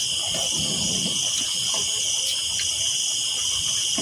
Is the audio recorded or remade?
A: recorded